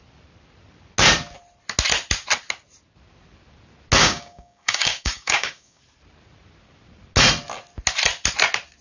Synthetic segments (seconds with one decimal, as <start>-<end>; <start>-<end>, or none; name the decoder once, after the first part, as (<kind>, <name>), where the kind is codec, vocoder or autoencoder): 4.0-5.8 (codec, DAC)